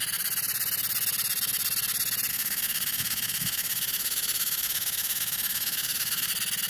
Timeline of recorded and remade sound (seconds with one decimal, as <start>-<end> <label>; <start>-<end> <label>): 0.0-2.3 recorded; 2.3-6.3 remade; 6.3-6.7 recorded